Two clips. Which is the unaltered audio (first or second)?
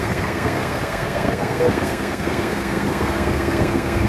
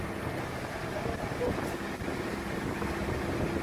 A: second